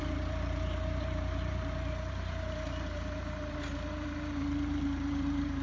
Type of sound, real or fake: fake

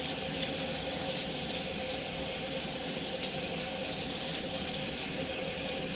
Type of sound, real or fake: real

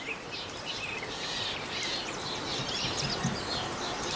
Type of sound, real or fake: fake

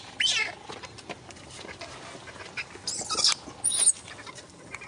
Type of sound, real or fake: real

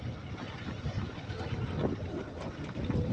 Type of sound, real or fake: real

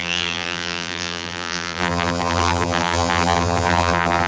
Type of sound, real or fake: fake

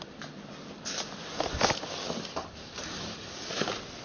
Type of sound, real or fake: fake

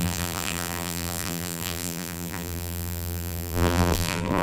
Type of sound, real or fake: fake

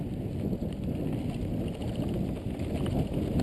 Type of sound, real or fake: real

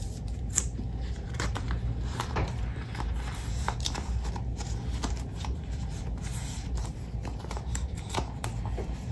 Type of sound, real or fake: fake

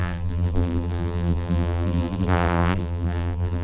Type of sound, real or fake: fake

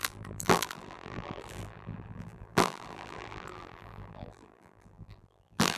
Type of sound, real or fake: fake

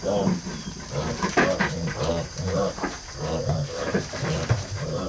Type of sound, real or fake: fake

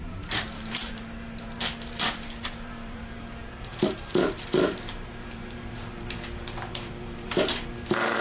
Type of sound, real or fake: fake